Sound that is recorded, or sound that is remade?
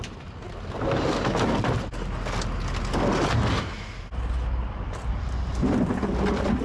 recorded